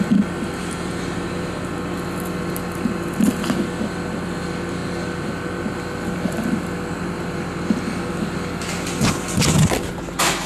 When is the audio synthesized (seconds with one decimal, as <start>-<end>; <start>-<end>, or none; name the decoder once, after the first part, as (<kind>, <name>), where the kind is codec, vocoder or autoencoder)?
0.6-1.6 (vocoder, BigVGAN v2)